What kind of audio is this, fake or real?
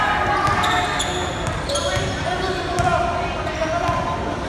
real